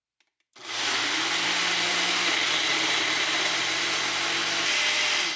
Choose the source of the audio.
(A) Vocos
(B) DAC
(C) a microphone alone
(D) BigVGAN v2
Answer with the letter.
C